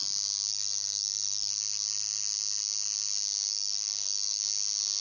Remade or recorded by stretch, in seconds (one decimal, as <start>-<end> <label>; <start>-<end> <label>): 0.0-0.5 recorded; 0.5-1.5 remade; 1.5-3.5 recorded; 3.5-4.4 remade; 4.4-5.0 recorded